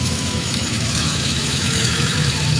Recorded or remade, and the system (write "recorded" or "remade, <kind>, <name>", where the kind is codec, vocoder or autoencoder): remade, autoencoder, DAC-VAE